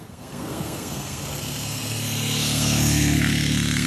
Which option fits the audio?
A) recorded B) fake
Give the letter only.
B